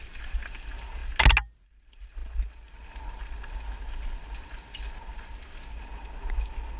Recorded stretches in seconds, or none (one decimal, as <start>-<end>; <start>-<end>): 0.0-6.8